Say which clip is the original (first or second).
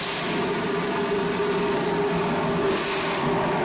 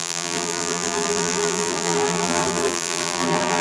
first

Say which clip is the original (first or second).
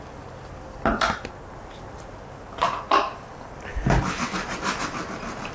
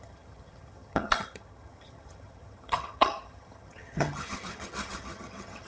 first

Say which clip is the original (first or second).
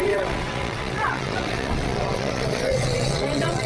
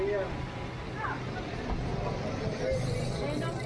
second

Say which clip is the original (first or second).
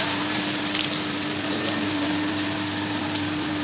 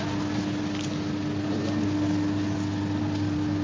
second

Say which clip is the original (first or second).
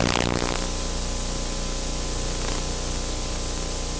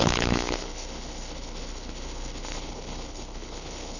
first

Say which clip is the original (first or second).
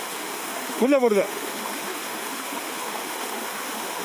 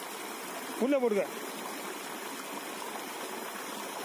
second